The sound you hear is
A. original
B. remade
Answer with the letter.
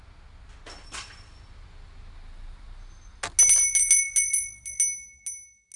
A